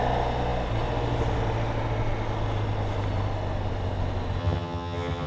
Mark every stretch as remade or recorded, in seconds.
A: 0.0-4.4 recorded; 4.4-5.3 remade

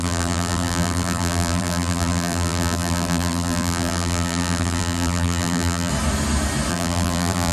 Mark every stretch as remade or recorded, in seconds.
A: 0.0-5.9 remade; 5.9-6.7 recorded; 6.7-7.5 remade

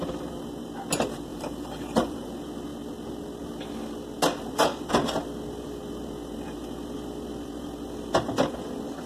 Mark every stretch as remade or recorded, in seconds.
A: 0.0-1.3 recorded; 1.3-2.3 remade; 2.3-9.1 recorded

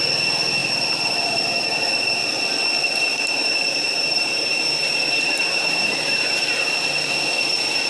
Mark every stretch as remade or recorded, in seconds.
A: 0.0-3.1 recorded; 3.1-6.4 remade; 6.4-7.9 recorded

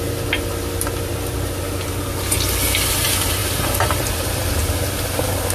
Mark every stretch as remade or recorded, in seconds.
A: 0.0-3.4 recorded; 3.4-4.2 remade; 4.2-5.5 recorded

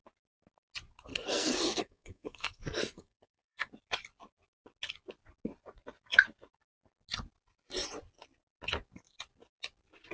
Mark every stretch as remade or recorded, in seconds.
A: 0.0-1.1 recorded; 1.1-3.7 remade; 3.7-10.1 recorded

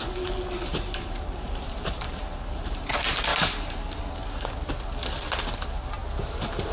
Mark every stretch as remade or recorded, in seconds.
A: 0.0-0.7 recorded; 0.7-2.9 remade; 2.9-3.3 recorded; 3.3-4.1 remade; 4.1-6.7 recorded

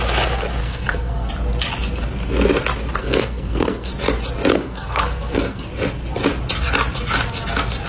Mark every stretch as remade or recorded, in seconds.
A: 0.0-0.6 recorded; 0.6-1.3 remade; 1.3-3.0 recorded; 3.0-3.9 remade; 3.9-4.5 recorded; 4.5-5.7 remade; 5.7-7.9 recorded